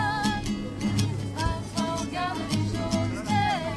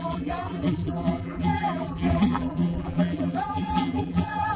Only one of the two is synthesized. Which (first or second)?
second